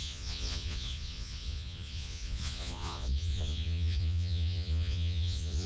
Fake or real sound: fake